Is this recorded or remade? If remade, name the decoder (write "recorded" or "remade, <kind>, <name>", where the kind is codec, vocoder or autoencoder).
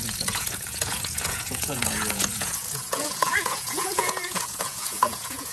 remade, vocoder, Vocos